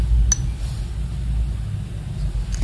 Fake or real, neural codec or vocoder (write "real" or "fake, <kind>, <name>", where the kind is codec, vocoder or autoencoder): real